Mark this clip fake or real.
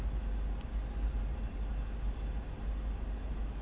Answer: real